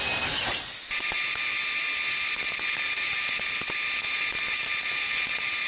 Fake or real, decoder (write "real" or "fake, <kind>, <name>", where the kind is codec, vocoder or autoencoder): fake, vocoder, BigVGAN v2